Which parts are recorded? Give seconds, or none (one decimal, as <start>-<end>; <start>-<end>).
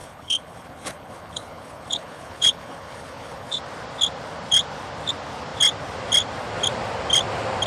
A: 3.6-7.7